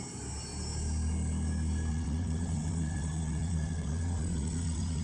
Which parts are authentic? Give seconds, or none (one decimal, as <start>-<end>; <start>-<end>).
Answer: 0.0-1.9